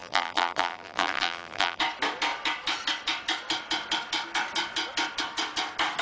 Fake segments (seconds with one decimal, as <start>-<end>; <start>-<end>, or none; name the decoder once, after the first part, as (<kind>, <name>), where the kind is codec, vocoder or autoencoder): 0.0-1.8 (vocoder, BigVGAN v2)